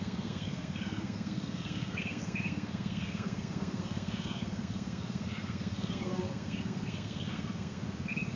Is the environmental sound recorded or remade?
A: remade